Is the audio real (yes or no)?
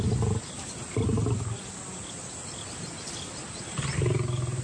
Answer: yes